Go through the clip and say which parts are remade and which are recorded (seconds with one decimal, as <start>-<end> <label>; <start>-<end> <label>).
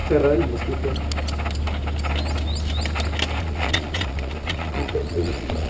0.0-3.4 recorded; 3.4-5.7 remade